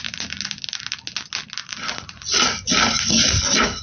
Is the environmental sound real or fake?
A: real